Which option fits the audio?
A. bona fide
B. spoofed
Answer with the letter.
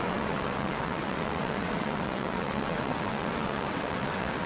B